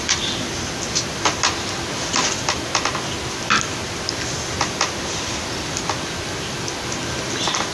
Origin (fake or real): real